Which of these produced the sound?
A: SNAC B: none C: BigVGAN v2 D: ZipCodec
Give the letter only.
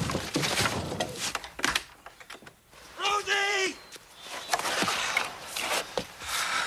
C